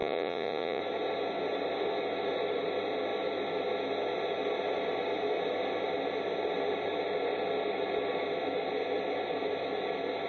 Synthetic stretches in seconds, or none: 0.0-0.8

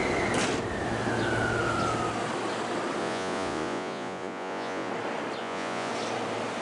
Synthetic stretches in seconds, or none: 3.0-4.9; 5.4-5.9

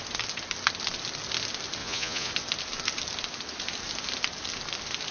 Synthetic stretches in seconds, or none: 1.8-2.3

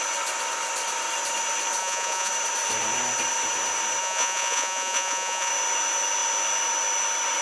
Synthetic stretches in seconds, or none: 1.8-2.3; 4.0-5.5